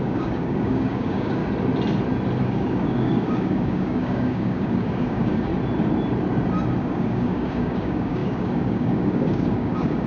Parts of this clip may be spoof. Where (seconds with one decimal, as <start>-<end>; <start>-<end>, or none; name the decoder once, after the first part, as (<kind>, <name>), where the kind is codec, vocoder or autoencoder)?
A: 0.0-1.4 (codec, DAC); 2.4-5.5; 6.8-10.1